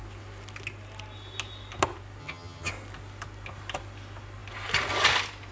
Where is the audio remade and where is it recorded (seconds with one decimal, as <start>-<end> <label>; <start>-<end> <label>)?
0.0-2.2 recorded; 2.2-2.7 remade; 2.7-5.5 recorded